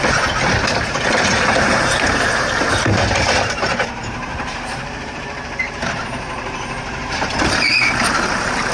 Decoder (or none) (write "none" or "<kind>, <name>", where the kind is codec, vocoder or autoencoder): vocoder, BigVGAN v2